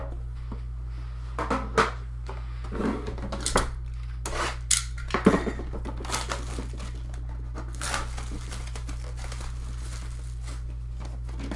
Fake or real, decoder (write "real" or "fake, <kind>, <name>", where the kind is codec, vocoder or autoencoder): real